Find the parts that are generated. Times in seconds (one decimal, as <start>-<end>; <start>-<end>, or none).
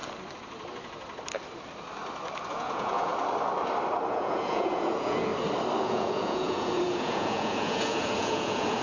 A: 2.5-3.1; 4.1-5.3; 5.8-8.8